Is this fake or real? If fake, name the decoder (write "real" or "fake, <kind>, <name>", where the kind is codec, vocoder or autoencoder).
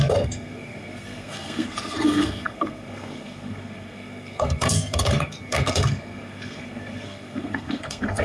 fake, codec, SNAC